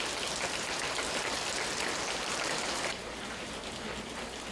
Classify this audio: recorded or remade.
recorded